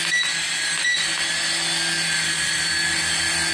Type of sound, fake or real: real